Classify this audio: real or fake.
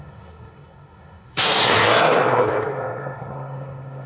fake